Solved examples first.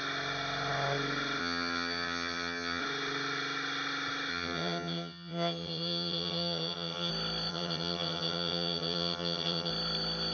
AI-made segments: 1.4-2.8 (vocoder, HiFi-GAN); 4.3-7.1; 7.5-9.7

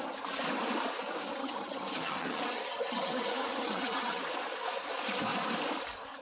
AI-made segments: 1.4-4.2 (vocoder, HiFi-GAN)